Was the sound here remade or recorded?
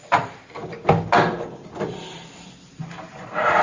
recorded